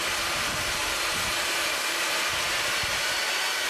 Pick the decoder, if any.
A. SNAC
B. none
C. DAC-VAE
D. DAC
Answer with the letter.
B